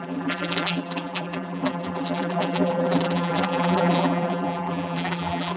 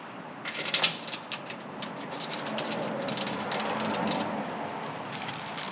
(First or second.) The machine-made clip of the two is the first